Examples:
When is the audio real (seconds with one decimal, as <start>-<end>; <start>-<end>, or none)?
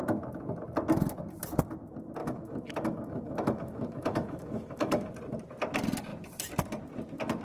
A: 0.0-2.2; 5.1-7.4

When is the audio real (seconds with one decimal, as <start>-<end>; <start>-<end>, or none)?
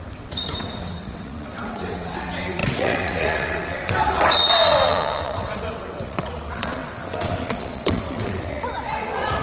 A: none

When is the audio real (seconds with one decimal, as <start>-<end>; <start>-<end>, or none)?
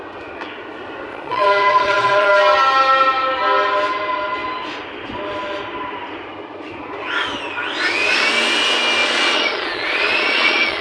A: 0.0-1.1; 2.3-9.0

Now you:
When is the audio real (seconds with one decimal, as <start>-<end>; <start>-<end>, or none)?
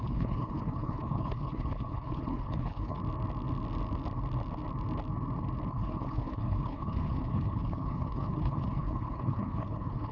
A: 3.0-5.7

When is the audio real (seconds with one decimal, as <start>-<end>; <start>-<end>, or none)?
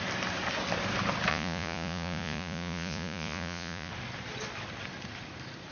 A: 0.0-1.3; 3.9-5.7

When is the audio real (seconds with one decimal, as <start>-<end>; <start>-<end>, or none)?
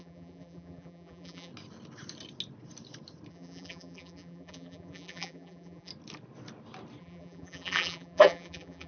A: 1.5-3.3; 5.9-7.0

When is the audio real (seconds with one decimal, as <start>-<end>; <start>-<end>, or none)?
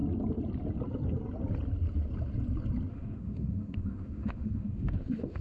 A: 0.0-2.9